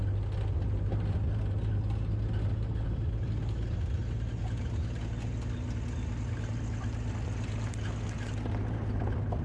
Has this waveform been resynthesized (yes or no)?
no